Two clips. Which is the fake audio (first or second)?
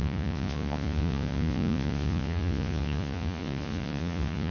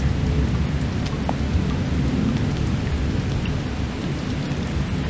first